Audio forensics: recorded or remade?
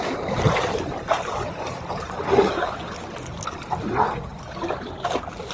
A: remade